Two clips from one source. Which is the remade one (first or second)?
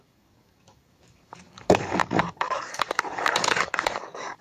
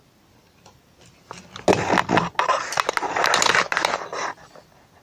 first